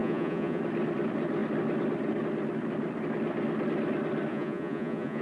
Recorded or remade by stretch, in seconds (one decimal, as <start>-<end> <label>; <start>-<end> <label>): 0.0-0.6 remade; 0.6-4.3 recorded; 4.3-5.2 remade